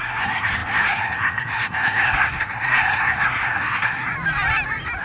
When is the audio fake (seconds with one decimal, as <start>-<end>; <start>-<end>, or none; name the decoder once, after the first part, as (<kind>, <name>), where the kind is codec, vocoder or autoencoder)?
0.0-4.1 (codec, SNAC)